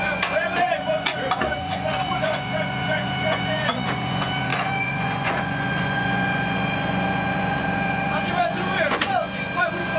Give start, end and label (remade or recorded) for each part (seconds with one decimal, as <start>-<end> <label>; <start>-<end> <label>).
0.0-10.0 remade

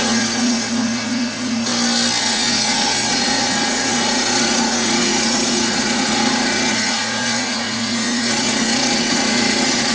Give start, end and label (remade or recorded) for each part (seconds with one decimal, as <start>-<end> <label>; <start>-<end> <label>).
0.0-1.7 remade; 1.7-2.2 recorded; 2.2-9.9 remade

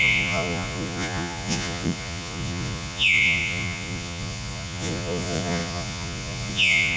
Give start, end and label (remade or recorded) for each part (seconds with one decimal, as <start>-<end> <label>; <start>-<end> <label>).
0.0-7.0 remade